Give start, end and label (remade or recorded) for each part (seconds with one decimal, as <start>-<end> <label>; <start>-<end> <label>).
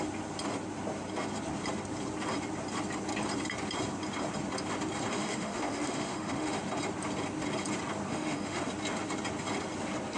0.0-5.1 recorded; 5.1-6.6 remade; 6.6-8.1 recorded; 8.1-8.7 remade; 8.7-10.2 recorded